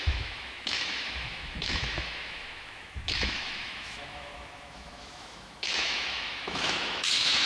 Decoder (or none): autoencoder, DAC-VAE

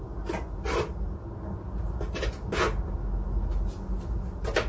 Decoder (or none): none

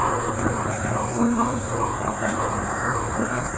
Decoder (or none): codec, SNAC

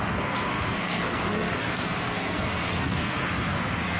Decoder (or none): codec, SNAC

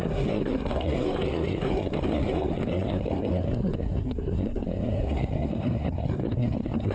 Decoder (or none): codec, SNAC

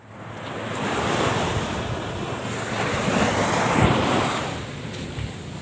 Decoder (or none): none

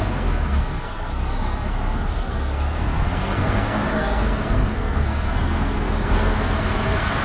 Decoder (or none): codec, SNAC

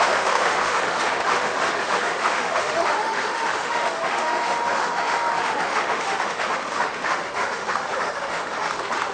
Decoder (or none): autoencoder, DAC-VAE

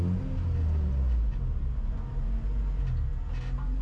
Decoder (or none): none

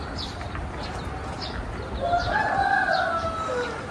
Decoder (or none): none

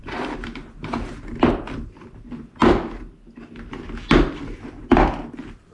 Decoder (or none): none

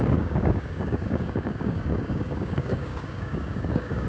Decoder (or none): codec, DAC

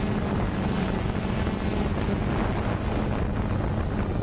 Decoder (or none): none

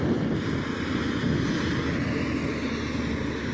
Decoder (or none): none